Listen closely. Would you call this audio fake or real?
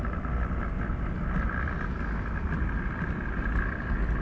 real